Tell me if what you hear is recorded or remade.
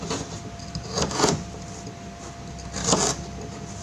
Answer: recorded